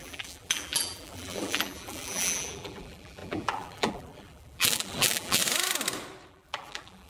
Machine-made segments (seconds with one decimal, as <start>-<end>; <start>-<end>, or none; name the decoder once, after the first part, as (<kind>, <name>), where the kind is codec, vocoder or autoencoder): 0.0-5.4 (vocoder, BigVGAN v2); 6.3-7.1